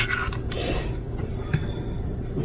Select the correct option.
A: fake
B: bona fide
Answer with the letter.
B